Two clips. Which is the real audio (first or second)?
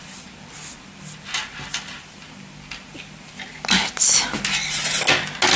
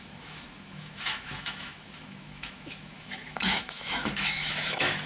first